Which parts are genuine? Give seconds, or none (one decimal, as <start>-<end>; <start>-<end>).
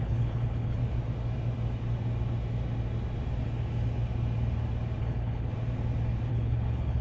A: 0.8-5.0; 5.5-6.3